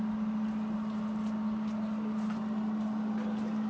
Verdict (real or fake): real